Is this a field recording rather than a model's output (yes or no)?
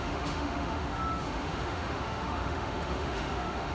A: no